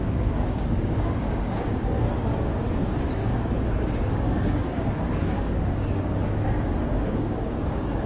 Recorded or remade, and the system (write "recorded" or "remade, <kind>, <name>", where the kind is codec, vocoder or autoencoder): remade, codec, DAC